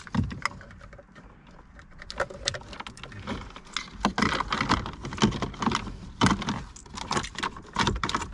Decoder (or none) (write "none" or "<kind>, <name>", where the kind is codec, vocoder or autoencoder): none